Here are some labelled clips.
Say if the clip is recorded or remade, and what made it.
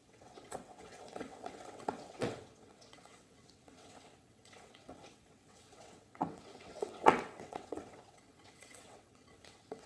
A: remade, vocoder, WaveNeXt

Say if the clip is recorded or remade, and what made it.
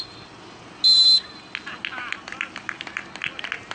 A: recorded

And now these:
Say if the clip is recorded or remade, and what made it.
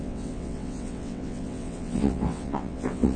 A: remade, vocoder, WaveNeXt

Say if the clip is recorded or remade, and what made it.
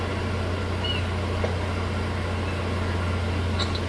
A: recorded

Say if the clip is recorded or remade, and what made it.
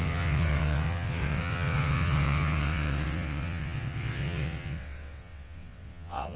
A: remade, vocoder, WaveNeXt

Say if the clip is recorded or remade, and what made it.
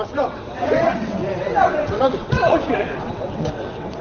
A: remade, vocoder, WaveNeXt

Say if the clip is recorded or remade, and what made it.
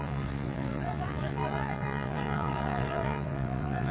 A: remade, vocoder, WaveNeXt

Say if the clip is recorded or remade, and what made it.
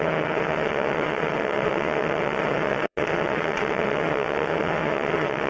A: remade, vocoder, WaveNeXt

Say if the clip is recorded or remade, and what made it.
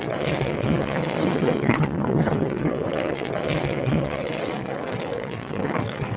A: remade, vocoder, WaveNeXt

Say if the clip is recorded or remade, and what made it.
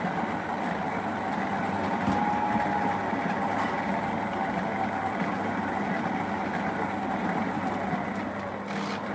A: recorded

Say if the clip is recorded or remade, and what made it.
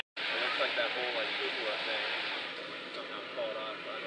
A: recorded